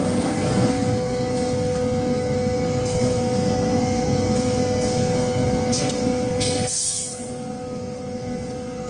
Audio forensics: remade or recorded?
remade